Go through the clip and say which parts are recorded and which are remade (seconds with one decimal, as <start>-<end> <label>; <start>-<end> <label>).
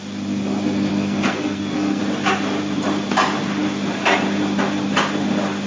0.0-0.9 recorded; 0.9-2.0 remade; 2.0-5.7 recorded